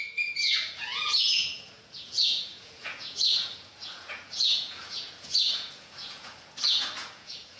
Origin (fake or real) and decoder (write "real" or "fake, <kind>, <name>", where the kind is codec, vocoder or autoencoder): fake, vocoder, Vocos